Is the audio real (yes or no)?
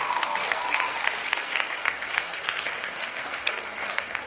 no